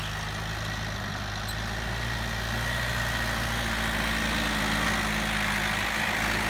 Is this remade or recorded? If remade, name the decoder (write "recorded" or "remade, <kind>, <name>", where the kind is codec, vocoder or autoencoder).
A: recorded